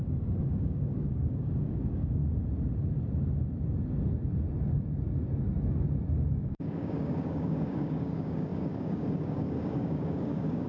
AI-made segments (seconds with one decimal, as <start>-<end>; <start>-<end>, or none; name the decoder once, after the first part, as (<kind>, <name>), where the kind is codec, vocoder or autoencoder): 0.0-2.2 (codec, DAC); 6.3-10.7